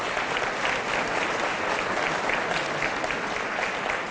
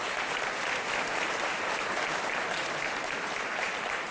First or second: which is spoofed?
second